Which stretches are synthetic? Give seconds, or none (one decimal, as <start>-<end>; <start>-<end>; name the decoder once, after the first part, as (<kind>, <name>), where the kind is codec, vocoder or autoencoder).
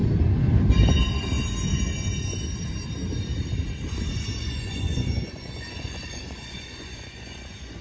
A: 4.4-7.8 (vocoder, Vocos)